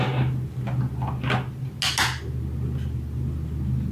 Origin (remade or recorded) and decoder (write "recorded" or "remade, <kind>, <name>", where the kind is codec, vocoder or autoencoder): recorded